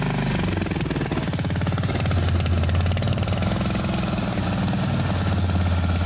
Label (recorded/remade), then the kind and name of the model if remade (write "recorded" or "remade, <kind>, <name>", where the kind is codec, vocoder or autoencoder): recorded